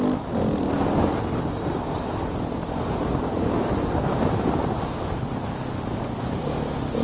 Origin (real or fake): real